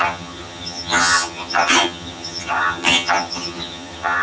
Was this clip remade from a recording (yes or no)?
yes